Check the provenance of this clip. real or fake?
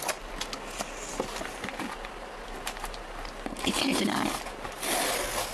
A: real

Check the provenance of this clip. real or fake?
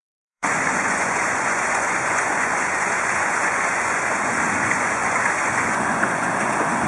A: fake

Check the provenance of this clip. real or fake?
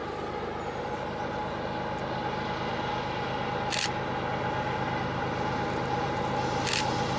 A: real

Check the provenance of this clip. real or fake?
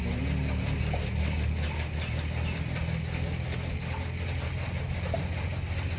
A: real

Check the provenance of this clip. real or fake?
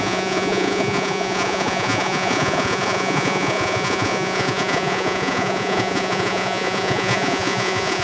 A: fake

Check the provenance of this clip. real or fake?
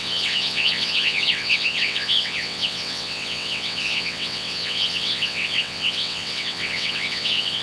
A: fake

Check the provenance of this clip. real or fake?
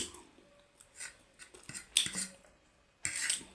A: real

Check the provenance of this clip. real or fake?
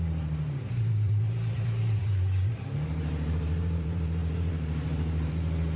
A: fake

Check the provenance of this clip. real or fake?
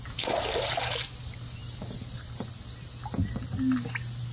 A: real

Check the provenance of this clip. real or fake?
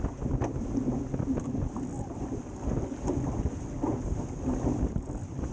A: real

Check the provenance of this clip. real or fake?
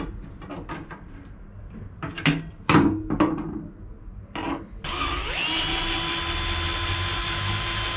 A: real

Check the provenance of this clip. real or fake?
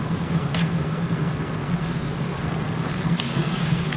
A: fake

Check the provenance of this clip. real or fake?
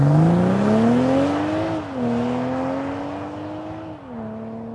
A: real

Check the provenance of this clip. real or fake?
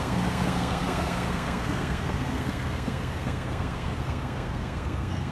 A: fake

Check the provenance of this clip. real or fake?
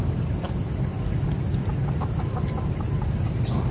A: real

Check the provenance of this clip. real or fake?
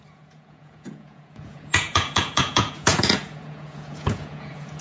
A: fake